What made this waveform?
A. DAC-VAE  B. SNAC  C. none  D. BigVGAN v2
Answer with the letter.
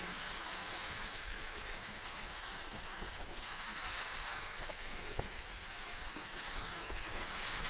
B